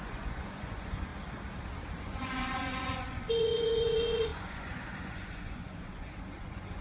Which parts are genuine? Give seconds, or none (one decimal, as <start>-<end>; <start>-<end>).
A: 1.1-2.0